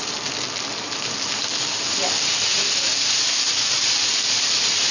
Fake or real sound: real